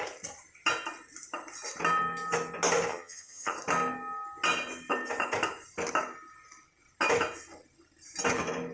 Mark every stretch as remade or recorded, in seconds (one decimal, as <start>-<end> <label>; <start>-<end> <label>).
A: 0.0-2.9 recorded; 2.9-3.5 remade; 3.5-8.7 recorded